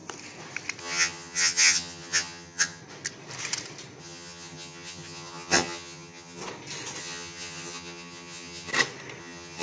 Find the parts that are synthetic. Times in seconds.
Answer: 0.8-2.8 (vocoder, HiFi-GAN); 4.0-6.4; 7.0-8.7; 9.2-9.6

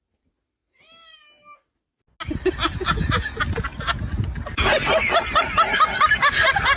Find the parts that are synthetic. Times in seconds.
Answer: none

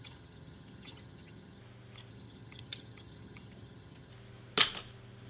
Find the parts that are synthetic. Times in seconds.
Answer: 0.0-1.6 (vocoder, HiFi-GAN); 2.1-4.1